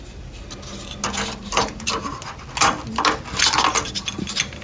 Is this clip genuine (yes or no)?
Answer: yes